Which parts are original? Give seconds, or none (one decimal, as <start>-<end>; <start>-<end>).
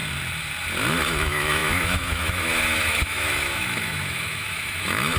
0.0-0.9